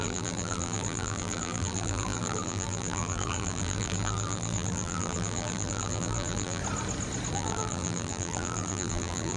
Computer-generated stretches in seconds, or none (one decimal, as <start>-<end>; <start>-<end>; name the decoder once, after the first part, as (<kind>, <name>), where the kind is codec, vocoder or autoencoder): 0.0-6.6 (vocoder, BigVGAN v2); 7.3-9.4